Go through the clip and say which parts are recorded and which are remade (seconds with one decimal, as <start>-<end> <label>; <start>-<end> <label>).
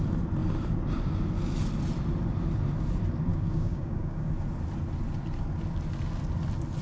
0.0-3.3 recorded; 3.3-4.3 remade; 4.3-6.8 recorded